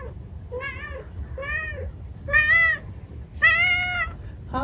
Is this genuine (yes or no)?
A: yes